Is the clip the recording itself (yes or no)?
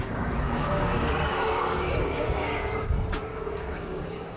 no